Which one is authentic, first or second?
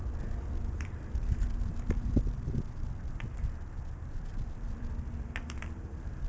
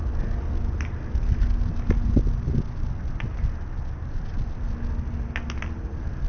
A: second